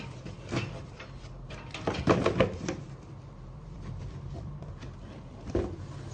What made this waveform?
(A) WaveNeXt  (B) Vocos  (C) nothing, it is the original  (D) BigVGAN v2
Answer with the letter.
D